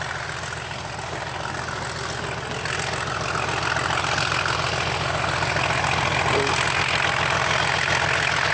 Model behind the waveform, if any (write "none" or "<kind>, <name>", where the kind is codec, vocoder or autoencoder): none